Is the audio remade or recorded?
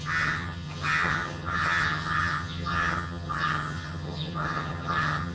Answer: remade